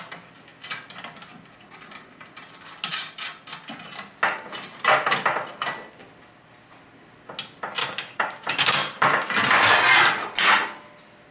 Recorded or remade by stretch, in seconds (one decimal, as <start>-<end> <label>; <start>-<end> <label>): 0.0-7.8 recorded; 7.8-9.3 remade; 9.3-11.3 recorded